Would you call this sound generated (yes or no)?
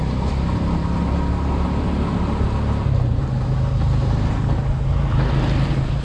no